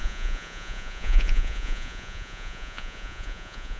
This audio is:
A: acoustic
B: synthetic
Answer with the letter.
B